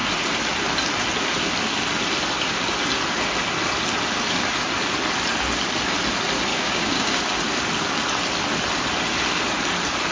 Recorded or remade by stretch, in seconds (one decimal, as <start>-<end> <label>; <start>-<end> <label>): 0.0-6.5 recorded; 6.5-7.2 remade; 7.2-10.1 recorded